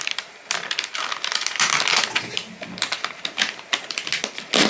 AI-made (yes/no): no